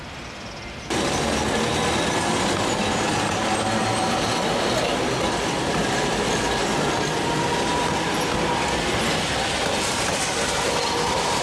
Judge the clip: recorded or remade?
recorded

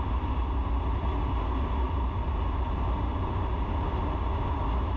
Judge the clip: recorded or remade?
recorded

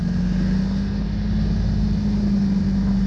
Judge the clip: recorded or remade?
recorded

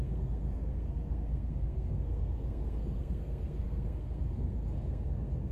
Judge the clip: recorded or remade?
remade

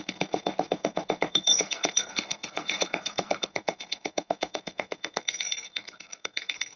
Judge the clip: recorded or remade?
remade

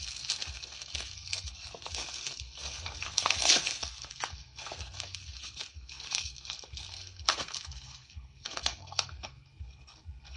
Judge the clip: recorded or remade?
remade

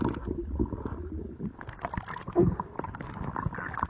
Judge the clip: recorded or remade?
recorded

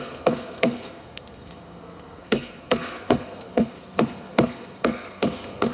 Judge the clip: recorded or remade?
remade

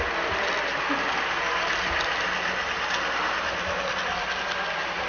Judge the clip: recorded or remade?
recorded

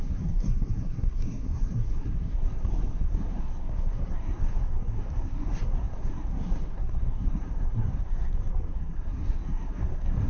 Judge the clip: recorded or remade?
remade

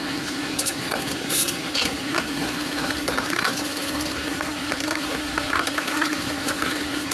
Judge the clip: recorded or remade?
remade